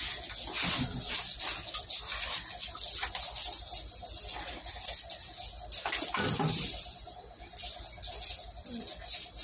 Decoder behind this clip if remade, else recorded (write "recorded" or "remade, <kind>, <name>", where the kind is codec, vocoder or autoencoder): recorded